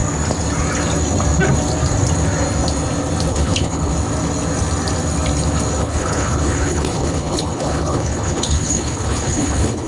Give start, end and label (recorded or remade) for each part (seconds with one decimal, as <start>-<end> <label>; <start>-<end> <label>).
0.0-3.3 recorded; 3.3-3.9 remade; 3.9-5.8 recorded; 5.8-9.9 remade